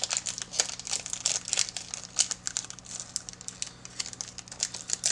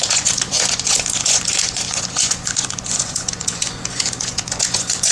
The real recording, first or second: first